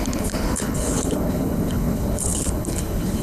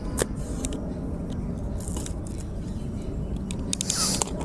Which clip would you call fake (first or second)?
first